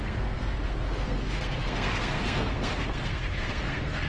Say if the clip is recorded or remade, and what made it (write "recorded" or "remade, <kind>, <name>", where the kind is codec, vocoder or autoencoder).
remade, codec, SNAC